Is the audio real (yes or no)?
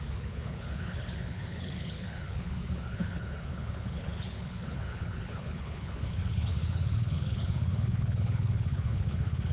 no